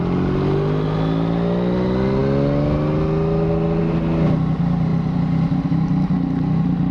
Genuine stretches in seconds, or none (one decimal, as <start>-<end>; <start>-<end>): 0.0-6.9